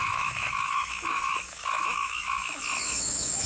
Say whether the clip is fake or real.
fake